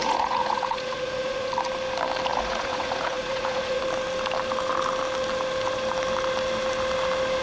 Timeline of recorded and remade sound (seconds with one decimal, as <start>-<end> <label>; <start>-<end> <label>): 0.0-1.5 remade; 1.5-2.3 recorded; 2.3-3.8 remade; 3.8-7.4 recorded